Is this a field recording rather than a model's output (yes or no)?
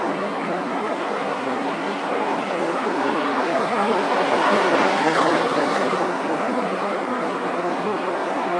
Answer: no